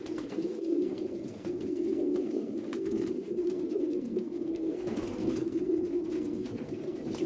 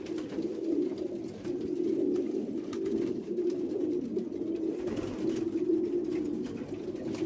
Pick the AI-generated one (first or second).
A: first